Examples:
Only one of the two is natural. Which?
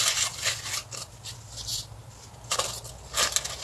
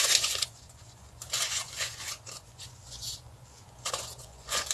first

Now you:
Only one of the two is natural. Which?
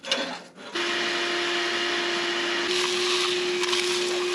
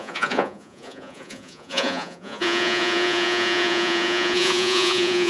first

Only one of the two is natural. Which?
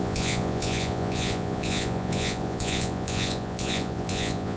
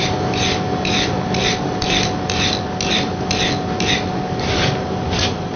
second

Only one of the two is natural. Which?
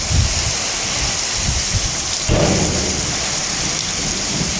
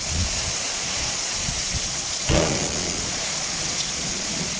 first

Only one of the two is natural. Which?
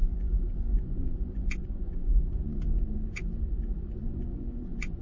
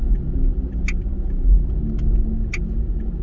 second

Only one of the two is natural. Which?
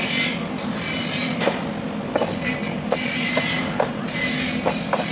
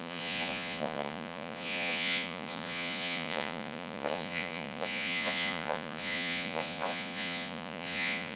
first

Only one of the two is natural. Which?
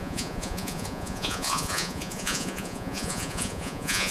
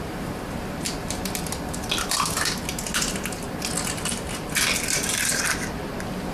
second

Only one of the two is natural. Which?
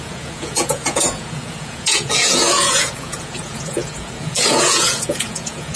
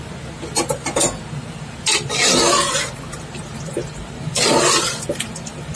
second